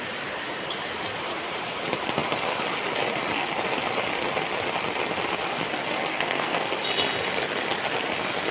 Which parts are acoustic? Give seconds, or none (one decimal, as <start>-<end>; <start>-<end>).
0.0-6.1; 6.7-8.5